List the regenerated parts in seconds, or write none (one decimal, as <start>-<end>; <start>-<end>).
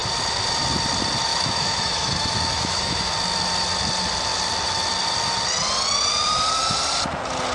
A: 1.3-3.1